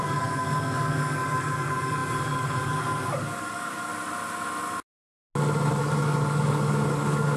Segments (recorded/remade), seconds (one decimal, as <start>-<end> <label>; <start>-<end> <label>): 0.0-3.9 remade; 3.9-5.8 recorded; 5.8-7.4 remade